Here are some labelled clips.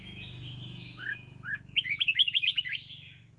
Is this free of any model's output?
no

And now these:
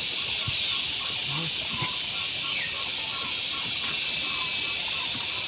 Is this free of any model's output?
yes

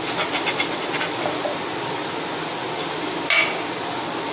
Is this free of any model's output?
yes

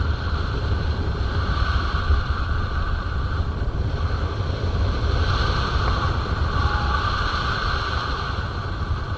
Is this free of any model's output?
no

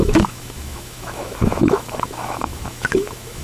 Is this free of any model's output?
no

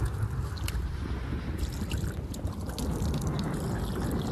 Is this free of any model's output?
yes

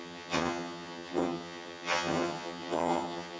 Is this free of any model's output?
no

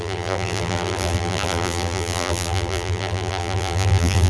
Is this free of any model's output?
no